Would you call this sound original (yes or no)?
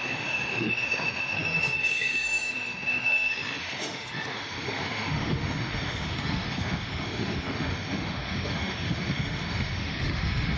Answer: no